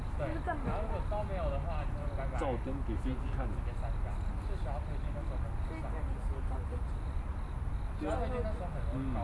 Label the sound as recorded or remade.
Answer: recorded